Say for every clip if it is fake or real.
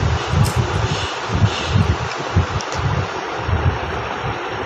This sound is real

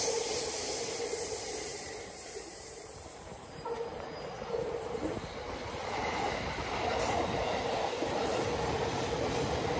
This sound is fake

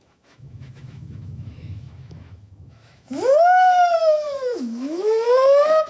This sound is fake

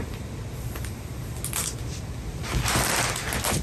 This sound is real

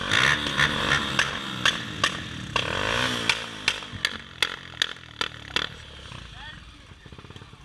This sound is real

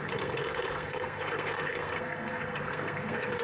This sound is fake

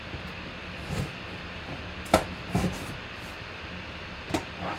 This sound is real